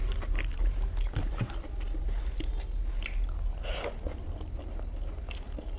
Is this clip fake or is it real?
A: real